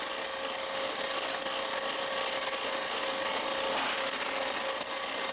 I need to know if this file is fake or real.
real